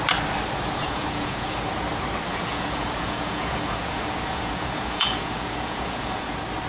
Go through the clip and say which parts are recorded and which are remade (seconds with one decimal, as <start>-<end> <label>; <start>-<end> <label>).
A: 0.0-0.8 recorded; 0.8-1.7 remade; 1.7-2.3 recorded; 2.3-6.3 remade; 6.3-6.7 recorded